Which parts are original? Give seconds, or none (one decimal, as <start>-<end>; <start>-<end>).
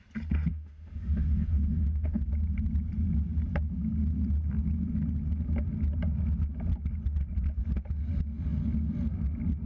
0.0-0.5; 2.2-9.7